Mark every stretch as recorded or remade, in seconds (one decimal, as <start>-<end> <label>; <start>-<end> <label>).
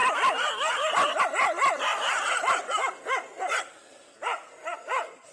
0.0-5.3 recorded